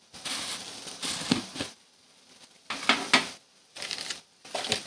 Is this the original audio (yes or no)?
yes